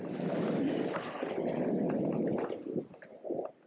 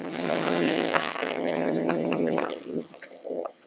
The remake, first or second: second